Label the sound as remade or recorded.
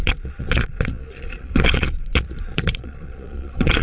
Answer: remade